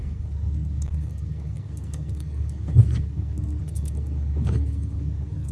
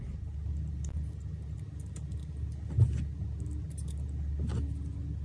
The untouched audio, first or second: second